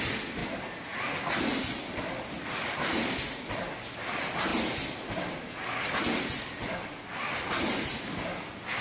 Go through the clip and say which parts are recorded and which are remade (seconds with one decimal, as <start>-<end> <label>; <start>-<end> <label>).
0.0-8.8 recorded

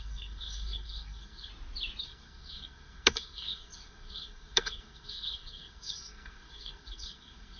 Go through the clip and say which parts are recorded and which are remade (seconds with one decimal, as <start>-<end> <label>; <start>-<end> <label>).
0.0-1.5 remade; 1.5-2.0 recorded; 2.0-7.6 remade